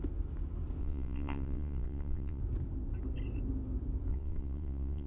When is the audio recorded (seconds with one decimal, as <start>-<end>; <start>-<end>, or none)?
0.0-0.8; 2.4-4.1